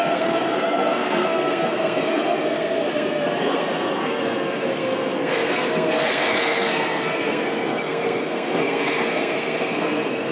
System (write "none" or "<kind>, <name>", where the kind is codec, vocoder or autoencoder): codec, SNAC